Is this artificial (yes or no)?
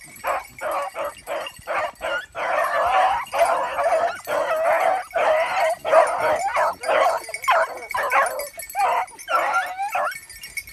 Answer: no